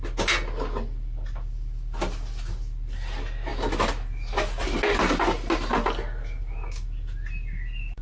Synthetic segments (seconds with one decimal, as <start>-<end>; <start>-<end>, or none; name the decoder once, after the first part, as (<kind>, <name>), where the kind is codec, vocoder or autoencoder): none